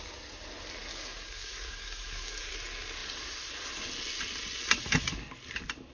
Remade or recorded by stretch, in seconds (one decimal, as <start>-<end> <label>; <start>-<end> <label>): 0.0-0.9 recorded; 0.9-2.5 remade; 2.5-5.9 recorded